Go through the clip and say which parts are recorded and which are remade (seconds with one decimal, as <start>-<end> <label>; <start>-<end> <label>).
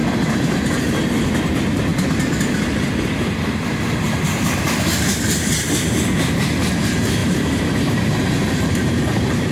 0.0-7.2 recorded; 7.2-9.5 remade